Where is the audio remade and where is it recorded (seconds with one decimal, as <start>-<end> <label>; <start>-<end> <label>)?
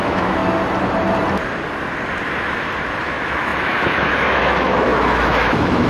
0.0-0.4 remade; 0.4-3.0 recorded; 3.0-5.9 remade